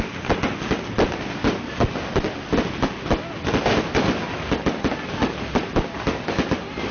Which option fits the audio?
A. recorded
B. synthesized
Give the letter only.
A